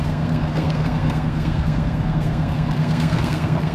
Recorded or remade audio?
remade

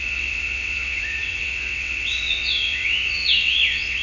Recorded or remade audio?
remade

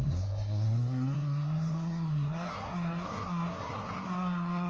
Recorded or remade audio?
remade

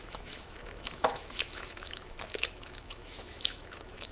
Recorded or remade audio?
remade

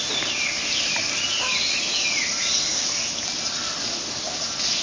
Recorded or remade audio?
recorded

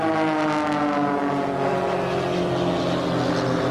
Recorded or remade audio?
recorded